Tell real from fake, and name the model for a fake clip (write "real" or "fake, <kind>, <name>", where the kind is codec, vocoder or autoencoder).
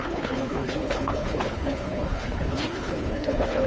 fake, codec, HILCodec